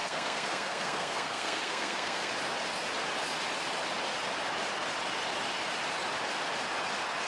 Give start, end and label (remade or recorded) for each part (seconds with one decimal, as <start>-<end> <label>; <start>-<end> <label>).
0.0-2.3 remade; 2.3-7.3 recorded